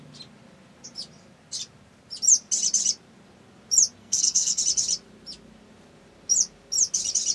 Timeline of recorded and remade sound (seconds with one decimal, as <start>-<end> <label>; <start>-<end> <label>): 0.0-4.0 recorded; 4.0-4.6 remade; 4.6-7.3 recorded